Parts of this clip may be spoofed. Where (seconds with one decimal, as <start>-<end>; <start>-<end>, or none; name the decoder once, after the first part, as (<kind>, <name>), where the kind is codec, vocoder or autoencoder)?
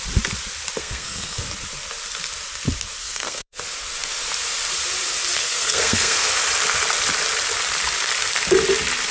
0.8-1.4 (codec, SNAC); 3.0-3.6; 5.4-6.3